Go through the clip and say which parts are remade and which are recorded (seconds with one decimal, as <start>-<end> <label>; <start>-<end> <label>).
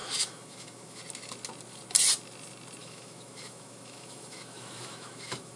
0.0-1.0 remade; 1.0-2.8 recorded; 2.8-5.6 remade